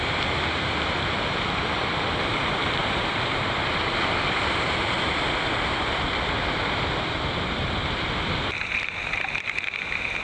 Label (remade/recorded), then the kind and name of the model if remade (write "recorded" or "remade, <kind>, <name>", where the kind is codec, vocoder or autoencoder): remade, vocoder, BigVGAN v2